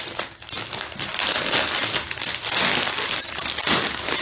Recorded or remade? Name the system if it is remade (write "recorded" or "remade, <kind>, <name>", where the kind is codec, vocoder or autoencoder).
recorded